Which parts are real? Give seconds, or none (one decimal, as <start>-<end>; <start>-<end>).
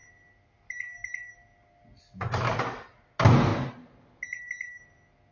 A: 0.0-3.5; 4.0-5.3